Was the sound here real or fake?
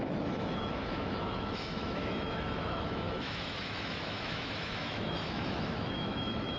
fake